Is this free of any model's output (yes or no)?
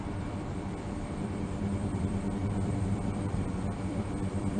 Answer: no